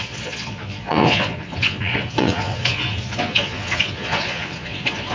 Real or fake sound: fake